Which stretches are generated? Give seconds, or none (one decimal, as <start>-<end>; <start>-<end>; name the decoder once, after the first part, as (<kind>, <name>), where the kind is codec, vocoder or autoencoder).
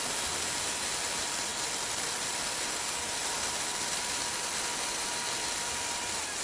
none